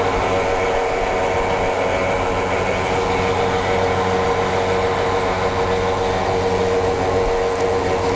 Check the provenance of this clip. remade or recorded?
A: recorded